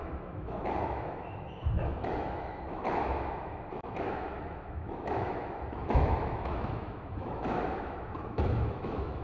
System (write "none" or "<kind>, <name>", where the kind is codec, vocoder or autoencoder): autoencoder, DAC-VAE